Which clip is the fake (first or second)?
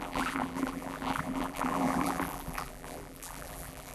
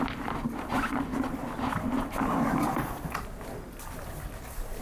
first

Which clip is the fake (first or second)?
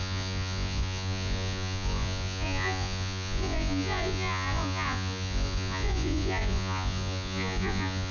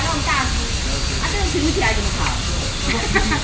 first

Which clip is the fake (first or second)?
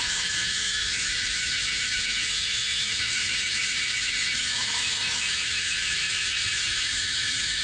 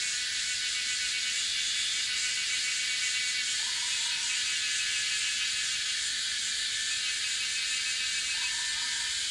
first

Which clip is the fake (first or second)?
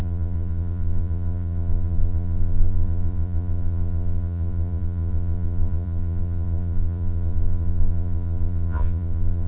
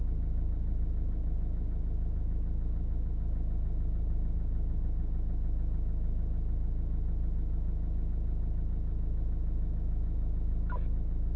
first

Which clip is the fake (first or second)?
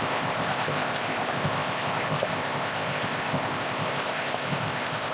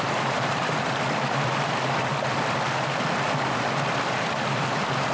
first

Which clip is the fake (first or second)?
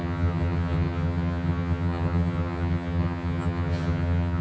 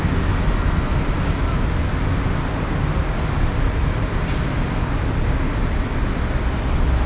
first